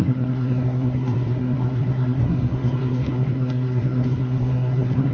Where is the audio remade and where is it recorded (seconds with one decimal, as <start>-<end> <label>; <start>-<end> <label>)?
0.0-5.1 remade